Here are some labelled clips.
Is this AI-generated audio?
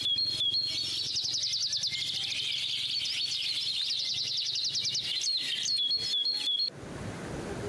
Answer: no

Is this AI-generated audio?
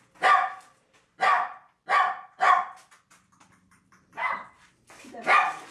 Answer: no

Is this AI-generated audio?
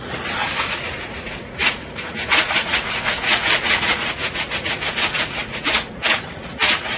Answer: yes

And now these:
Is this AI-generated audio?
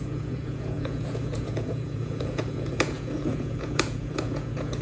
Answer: yes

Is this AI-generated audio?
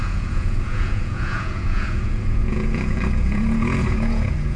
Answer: yes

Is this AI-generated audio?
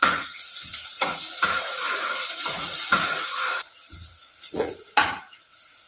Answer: yes